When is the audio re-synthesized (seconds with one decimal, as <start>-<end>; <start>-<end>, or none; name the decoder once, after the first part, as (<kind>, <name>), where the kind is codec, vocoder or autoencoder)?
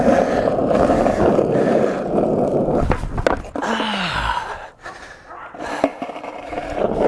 0.6-2.0 (vocoder, BigVGAN v2); 5.9-7.1